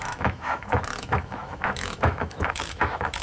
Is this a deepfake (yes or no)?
yes